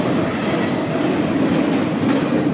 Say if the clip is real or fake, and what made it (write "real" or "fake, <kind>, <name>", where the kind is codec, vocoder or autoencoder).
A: real